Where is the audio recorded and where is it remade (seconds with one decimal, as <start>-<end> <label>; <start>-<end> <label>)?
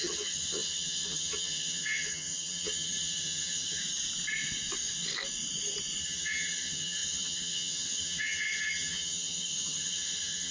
0.0-3.8 remade; 3.8-6.0 recorded; 6.0-10.5 remade